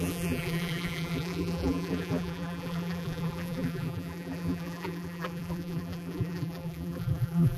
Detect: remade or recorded remade